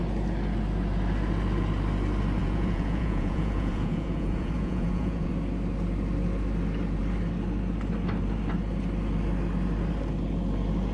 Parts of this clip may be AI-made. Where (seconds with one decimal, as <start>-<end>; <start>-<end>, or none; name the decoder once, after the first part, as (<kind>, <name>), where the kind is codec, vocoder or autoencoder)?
2.4-5.3 (vocoder, Vocos)